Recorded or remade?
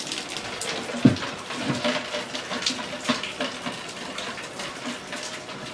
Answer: recorded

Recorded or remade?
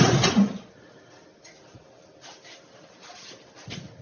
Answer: recorded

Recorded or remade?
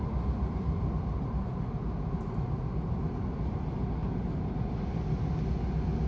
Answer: recorded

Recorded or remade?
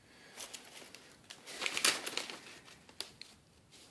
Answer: recorded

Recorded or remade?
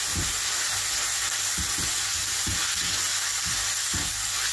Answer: recorded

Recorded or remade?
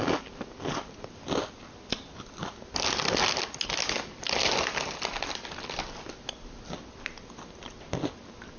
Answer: recorded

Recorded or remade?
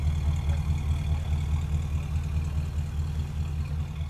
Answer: recorded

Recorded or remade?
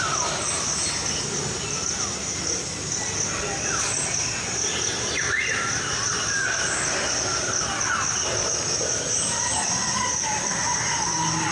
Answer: recorded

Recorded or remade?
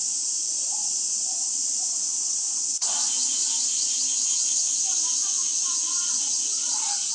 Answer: remade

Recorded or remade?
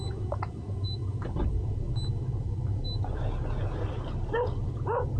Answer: recorded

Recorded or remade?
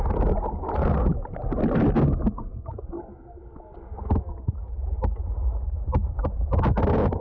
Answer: recorded